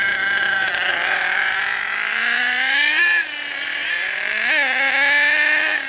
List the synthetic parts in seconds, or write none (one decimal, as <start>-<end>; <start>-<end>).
0.9-3.0; 3.7-4.3